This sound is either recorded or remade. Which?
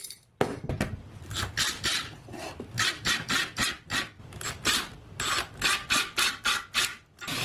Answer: recorded